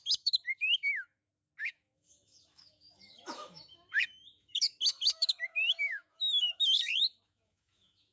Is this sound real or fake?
fake